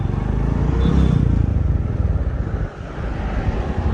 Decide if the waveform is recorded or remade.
recorded